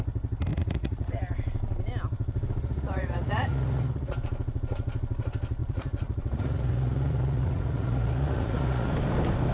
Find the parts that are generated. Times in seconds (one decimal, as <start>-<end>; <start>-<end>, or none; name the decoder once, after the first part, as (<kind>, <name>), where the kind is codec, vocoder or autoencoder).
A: 0.5-1.1 (vocoder, Vocos); 2.6-4.2; 5.6-8.9

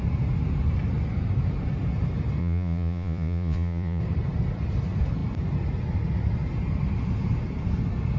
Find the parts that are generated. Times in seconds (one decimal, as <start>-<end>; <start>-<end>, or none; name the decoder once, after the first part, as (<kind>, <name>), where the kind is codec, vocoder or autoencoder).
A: 2.4-4.0 (vocoder, Vocos)